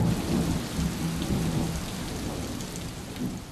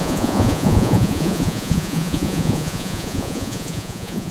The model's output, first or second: second